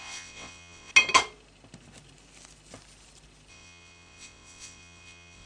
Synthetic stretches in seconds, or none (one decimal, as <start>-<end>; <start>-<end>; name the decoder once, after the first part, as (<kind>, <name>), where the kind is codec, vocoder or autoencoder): 0.0-0.9 (vocoder, WaveNeXt); 3.5-5.5